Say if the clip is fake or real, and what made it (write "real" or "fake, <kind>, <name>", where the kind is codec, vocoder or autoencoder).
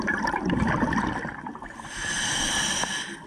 fake, vocoder, BigVGAN v2